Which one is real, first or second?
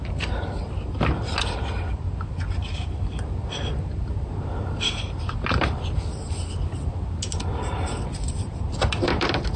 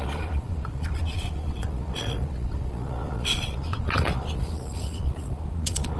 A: first